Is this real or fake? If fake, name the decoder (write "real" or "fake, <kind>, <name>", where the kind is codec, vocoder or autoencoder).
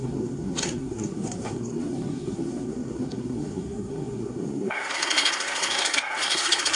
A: fake, codec, SNAC